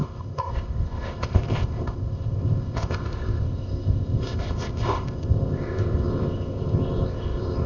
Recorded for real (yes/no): no